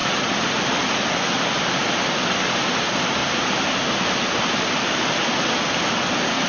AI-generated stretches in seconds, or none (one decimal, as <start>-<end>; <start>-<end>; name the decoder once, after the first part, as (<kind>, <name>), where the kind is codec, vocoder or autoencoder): 0.0-0.9 (vocoder, BigVGAN v2); 3.2-5.1